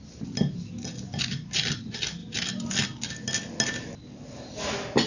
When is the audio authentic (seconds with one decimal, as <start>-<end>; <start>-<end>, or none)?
0.0-5.1